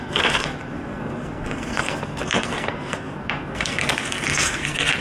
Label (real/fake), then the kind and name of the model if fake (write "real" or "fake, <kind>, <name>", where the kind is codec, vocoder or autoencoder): fake, codec, SNAC